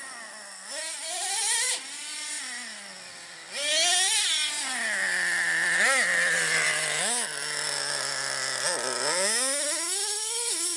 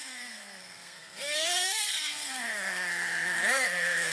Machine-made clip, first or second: second